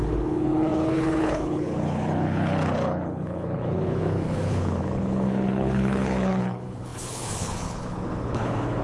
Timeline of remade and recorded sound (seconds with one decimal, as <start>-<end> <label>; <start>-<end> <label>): 0.0-8.8 remade